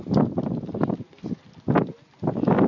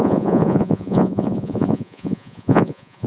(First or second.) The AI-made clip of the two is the second